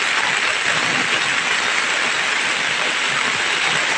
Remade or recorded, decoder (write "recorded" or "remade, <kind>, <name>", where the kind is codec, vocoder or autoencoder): recorded